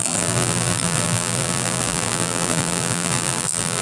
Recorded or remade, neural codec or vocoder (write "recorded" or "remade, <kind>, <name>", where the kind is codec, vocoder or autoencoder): remade, vocoder, BigVGAN v2